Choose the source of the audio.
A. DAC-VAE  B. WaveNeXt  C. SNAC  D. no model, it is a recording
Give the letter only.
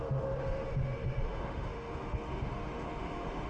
A